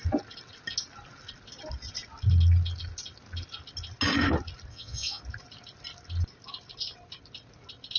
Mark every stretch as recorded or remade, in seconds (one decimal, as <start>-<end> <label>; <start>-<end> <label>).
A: 0.0-4.7 recorded; 4.7-5.2 remade; 5.2-8.0 recorded